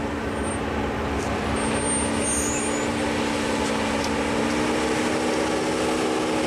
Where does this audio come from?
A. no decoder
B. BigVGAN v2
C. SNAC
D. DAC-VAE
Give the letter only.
A